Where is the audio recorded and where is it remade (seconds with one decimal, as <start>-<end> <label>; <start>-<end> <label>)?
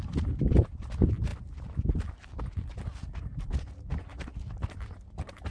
0.0-1.3 remade; 1.3-3.4 recorded; 3.4-4.3 remade; 4.3-5.1 recorded; 5.1-5.5 remade